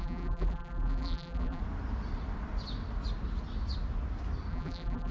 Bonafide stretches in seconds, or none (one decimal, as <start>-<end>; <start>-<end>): 1.6-4.5